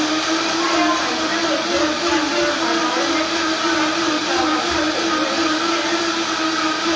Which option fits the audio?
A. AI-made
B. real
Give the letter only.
B